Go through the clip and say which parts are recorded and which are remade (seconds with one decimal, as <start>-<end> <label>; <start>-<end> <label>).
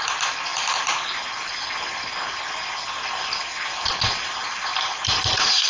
0.0-5.7 recorded